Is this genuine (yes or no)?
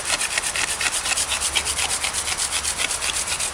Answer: yes